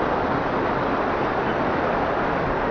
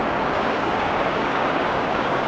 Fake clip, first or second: second